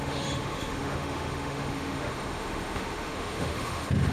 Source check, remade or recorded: remade